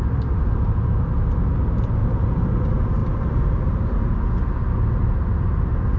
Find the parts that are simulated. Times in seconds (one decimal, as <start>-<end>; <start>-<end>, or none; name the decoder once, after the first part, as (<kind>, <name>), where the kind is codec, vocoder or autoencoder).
2.0-2.5 (vocoder, BigVGAN v2)